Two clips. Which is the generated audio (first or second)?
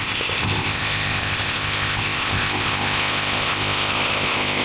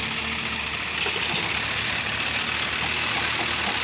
first